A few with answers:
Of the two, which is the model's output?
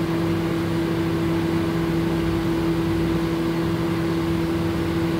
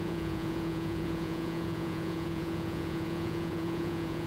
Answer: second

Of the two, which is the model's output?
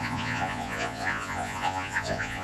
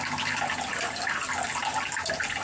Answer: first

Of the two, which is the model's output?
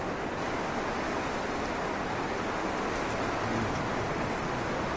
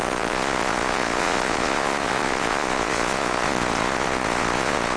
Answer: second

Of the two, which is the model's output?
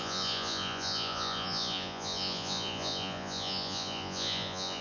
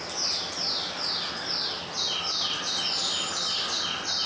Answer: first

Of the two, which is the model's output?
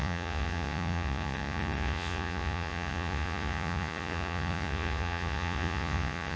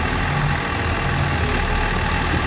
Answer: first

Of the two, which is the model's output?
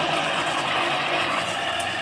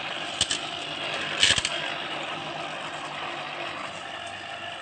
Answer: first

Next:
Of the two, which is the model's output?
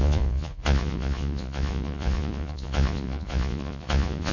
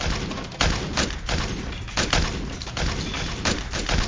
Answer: first